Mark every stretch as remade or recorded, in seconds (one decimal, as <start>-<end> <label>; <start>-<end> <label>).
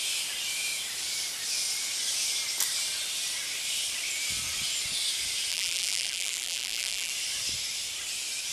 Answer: 0.0-5.5 recorded; 5.5-7.1 remade; 7.1-8.5 recorded